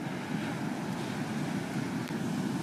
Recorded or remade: recorded